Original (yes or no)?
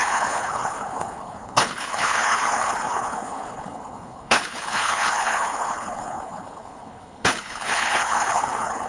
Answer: no